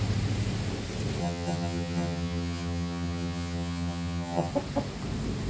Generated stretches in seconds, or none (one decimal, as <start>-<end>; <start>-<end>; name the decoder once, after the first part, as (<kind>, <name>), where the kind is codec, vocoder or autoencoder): 1.2-4.5 (vocoder, HiFi-GAN)